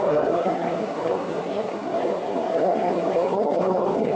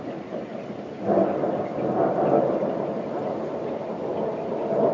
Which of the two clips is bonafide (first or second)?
second